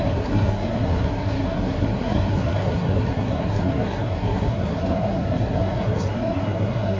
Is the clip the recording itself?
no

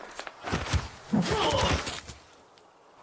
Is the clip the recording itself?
yes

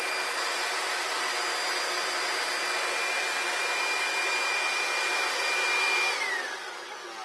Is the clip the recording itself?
yes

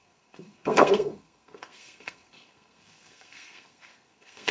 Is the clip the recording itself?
no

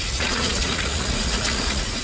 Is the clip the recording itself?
no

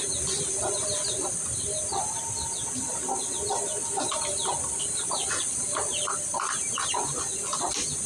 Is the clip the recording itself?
yes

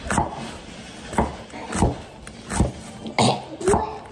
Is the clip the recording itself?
yes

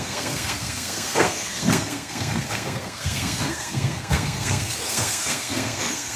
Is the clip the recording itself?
no